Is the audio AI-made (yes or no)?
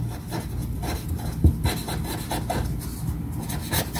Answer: no